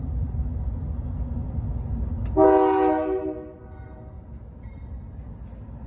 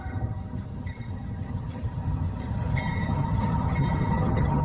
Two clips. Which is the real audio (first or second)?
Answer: first